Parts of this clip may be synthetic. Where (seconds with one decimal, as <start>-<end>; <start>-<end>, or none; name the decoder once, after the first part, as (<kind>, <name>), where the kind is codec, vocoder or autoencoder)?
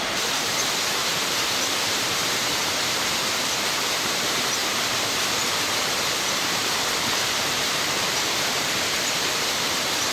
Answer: 0.0-4.6 (vocoder, BigVGAN v2); 6.3-10.1